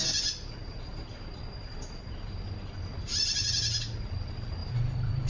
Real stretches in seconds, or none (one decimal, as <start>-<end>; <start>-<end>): 0.0-0.6; 3.3-4.6